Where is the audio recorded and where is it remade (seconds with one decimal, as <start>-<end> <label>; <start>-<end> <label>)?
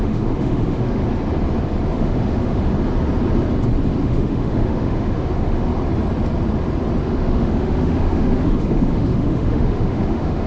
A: 0.0-1.0 remade; 1.0-1.9 recorded; 1.9-2.7 remade; 2.7-4.0 recorded; 4.0-5.7 remade; 5.7-7.0 recorded; 7.0-10.5 remade